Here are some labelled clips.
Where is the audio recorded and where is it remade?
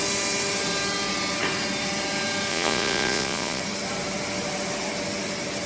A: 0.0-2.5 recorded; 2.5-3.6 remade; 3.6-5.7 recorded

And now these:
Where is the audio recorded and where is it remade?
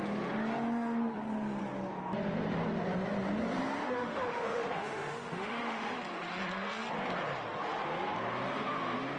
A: 0.0-3.8 recorded; 3.8-6.0 remade; 6.0-9.2 recorded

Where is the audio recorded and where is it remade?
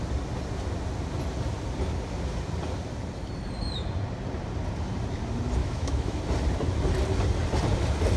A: 0.0-5.6 recorded; 5.6-6.2 remade; 6.2-8.2 recorded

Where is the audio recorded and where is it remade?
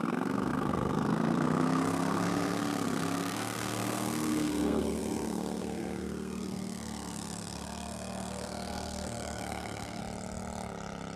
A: 0.0-10.0 remade; 10.0-11.2 recorded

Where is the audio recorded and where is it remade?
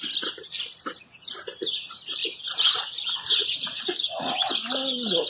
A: 0.0-3.4 recorded; 3.4-4.5 remade; 4.5-5.3 recorded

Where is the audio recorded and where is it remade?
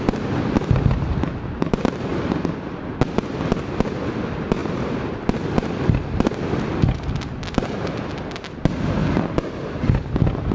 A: 0.0-10.5 recorded